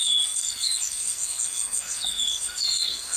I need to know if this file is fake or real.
fake